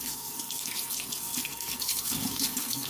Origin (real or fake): fake